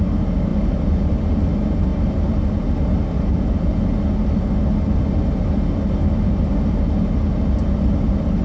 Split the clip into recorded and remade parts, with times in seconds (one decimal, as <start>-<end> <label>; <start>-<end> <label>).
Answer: 0.0-8.4 recorded